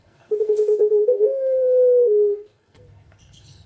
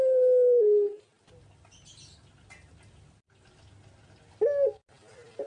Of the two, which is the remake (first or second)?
first